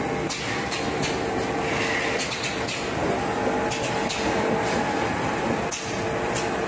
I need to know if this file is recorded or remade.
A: recorded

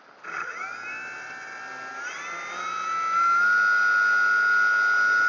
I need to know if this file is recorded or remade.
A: recorded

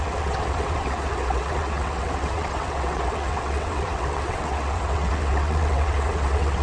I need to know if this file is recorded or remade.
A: remade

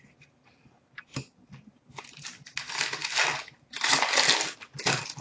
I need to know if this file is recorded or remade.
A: recorded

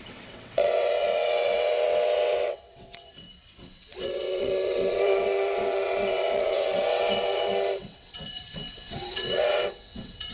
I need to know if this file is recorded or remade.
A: remade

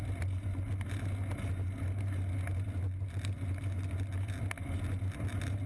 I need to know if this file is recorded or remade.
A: recorded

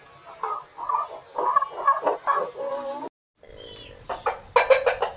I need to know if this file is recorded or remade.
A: recorded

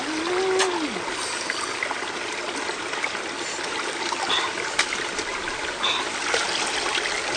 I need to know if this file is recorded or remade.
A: recorded